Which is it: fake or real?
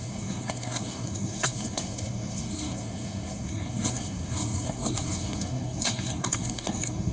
fake